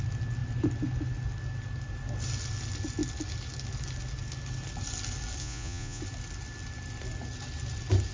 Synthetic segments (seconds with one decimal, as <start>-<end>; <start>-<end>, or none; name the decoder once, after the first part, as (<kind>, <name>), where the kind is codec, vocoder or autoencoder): 5.4-6.0 (vocoder, Vocos)